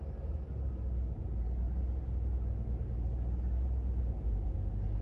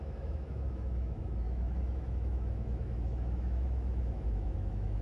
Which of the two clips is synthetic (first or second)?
second